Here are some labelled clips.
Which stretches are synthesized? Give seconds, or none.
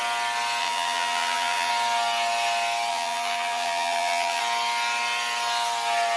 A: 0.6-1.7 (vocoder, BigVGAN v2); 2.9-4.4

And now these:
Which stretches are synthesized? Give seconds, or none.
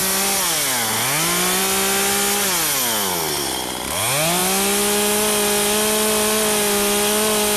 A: none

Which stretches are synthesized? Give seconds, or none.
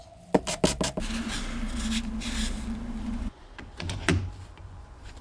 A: 3.1-4.1 (vocoder, Vocos); 4.7-5.2